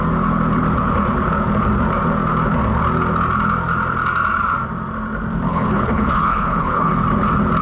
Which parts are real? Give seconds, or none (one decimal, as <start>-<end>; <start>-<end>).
0.0-5.5; 6.9-7.6